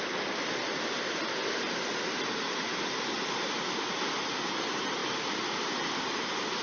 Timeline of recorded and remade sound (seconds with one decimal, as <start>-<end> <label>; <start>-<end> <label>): 0.0-2.7 recorded; 2.7-4.2 remade; 4.2-5.0 recorded; 5.0-6.0 remade; 6.0-6.6 recorded